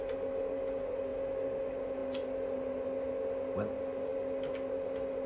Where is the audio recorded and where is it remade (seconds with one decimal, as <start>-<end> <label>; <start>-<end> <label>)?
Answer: 0.0-5.3 recorded

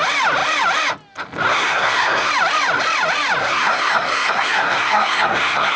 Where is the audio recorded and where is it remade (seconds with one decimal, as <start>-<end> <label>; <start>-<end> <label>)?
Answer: 0.0-1.5 recorded; 1.5-2.3 remade; 2.3-3.4 recorded; 3.4-5.8 remade

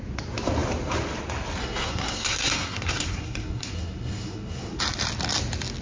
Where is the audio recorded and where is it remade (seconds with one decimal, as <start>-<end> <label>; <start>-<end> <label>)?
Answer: 0.0-1.6 recorded; 1.6-4.8 remade; 4.8-5.8 recorded

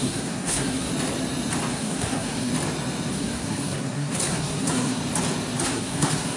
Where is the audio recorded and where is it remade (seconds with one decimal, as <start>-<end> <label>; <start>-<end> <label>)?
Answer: 0.0-0.9 remade; 0.9-1.7 recorded; 1.7-2.5 remade; 2.5-3.1 recorded; 3.1-5.0 remade; 5.0-5.6 recorded; 5.6-6.4 remade

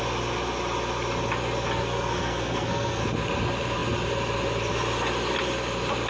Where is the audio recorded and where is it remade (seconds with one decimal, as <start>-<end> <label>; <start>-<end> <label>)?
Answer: 0.0-1.8 recorded; 1.8-3.0 remade; 3.0-6.1 recorded

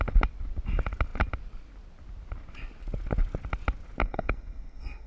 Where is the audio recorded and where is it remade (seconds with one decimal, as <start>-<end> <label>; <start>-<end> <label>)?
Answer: 0.0-4.0 recorded; 4.0-5.1 remade

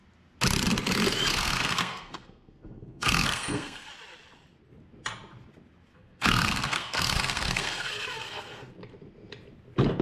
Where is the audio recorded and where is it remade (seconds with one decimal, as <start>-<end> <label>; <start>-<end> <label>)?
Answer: 0.0-1.3 recorded; 1.3-3.9 remade; 3.9-5.9 recorded; 5.9-8.7 remade; 8.7-10.0 recorded